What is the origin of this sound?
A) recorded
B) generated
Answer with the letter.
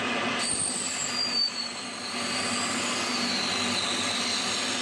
A